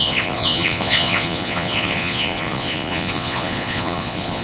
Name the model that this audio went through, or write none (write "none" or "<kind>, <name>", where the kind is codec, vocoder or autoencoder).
vocoder, Vocos